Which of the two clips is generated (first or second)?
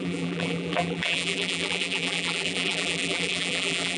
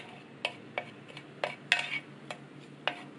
first